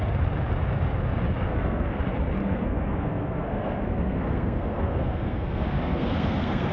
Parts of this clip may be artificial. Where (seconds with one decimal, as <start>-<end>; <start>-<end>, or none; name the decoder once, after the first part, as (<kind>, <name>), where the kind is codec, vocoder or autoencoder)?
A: 1.5-2.0 (codec, SNAC); 2.4-6.7